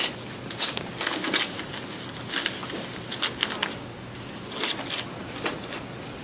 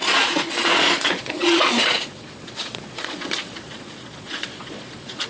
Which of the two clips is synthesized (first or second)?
second